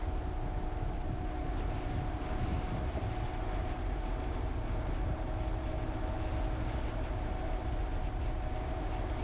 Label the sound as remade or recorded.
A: recorded